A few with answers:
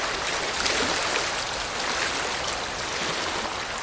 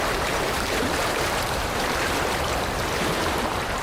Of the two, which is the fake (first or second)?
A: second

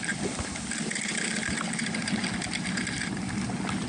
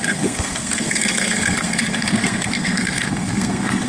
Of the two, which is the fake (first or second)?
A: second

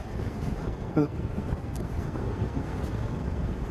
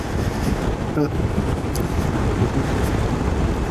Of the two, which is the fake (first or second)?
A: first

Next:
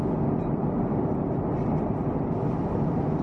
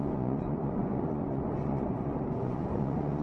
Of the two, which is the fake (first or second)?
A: second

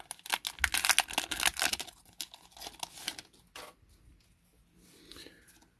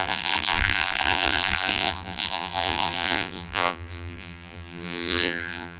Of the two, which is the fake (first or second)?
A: second